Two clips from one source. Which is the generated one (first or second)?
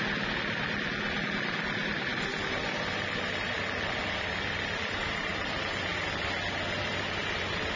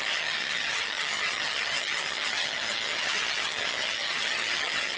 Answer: second